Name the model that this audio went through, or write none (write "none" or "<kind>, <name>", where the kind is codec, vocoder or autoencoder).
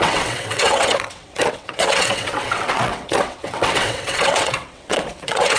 vocoder, WaveNeXt